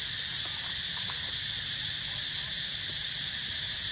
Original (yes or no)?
yes